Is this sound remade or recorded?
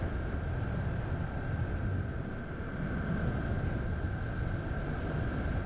recorded